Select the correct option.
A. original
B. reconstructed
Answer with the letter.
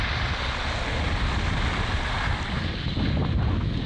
A